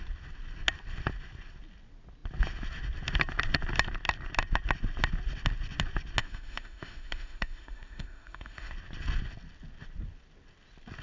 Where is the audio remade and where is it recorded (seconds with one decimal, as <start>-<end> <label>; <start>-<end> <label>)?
0.0-6.2 recorded; 6.2-8.7 remade; 8.7-11.0 recorded